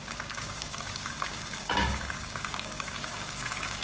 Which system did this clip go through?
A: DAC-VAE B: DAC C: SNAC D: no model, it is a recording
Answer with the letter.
B